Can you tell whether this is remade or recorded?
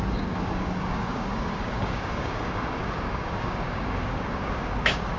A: remade